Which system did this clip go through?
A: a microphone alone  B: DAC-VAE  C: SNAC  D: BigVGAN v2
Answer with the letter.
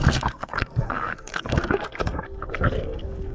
C